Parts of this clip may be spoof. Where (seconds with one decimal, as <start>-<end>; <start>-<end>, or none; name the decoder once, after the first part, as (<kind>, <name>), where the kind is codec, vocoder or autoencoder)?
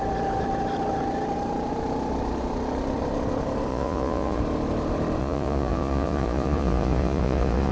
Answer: 3.7-4.4 (vocoder, Vocos); 5.2-7.7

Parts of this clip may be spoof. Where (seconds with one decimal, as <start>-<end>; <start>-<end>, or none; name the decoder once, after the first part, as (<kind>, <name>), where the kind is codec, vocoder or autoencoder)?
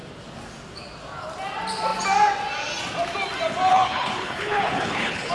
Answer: 3.7-5.3 (codec, HILCodec)